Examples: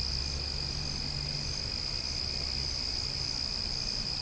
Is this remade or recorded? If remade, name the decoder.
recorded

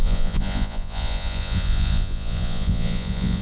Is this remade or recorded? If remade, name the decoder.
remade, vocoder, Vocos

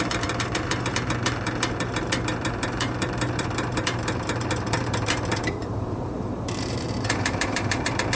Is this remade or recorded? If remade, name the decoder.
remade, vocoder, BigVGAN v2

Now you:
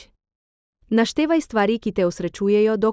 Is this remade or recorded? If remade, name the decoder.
recorded